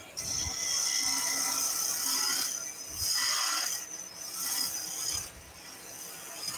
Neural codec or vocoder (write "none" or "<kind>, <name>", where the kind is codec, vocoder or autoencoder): none